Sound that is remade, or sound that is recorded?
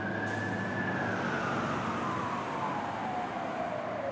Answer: recorded